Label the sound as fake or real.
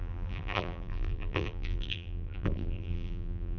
fake